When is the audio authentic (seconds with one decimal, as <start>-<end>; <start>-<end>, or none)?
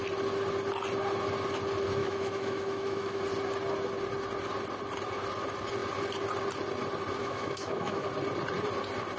0.0-2.0; 3.2-7.2; 8.1-9.2